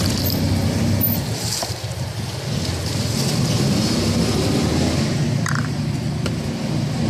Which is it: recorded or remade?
recorded